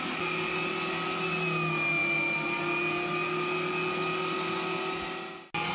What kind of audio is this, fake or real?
real